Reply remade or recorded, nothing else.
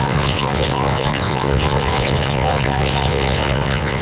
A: remade